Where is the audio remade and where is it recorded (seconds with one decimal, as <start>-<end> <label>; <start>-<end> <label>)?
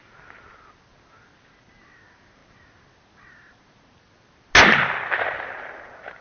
0.0-6.2 recorded